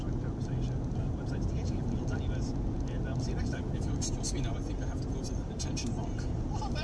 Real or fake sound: real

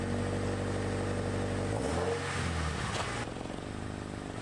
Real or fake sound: real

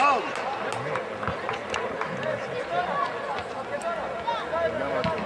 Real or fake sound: real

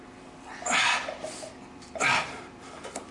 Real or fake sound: fake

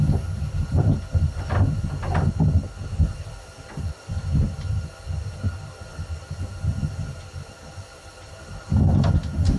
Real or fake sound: real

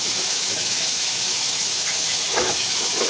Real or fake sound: fake